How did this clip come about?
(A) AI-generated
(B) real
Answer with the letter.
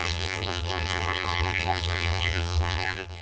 A